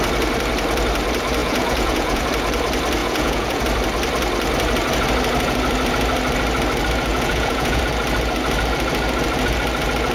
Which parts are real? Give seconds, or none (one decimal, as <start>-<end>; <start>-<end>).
0.0-1.4; 2.2-3.0; 3.6-7.1; 7.8-10.1